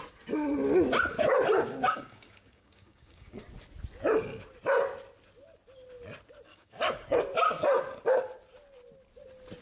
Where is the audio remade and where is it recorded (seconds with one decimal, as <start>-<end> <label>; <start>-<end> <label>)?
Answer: 0.0-1.8 recorded; 1.8-3.4 remade; 3.4-6.5 recorded; 6.5-7.2 remade; 7.2-9.6 recorded